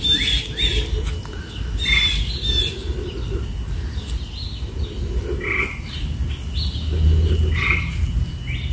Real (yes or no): yes